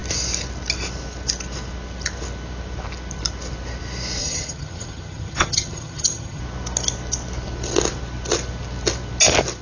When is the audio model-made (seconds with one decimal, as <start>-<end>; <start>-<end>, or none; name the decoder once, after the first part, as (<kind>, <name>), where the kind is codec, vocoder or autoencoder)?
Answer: 4.2-6.4 (vocoder, HiFi-GAN)